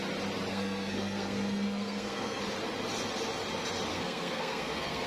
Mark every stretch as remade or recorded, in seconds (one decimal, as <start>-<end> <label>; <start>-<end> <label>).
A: 0.0-0.5 recorded; 0.5-2.4 remade; 2.4-3.9 recorded; 3.9-5.1 remade